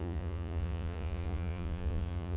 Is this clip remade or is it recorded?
remade